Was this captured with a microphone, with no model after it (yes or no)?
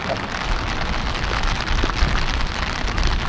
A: yes